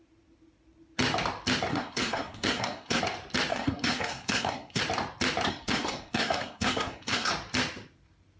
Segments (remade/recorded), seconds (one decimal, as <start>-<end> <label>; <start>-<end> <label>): 0.0-1.7 recorded; 1.7-3.0 remade; 3.0-3.5 recorded; 3.5-4.8 remade; 4.8-5.5 recorded; 5.5-7.3 remade; 7.3-8.4 recorded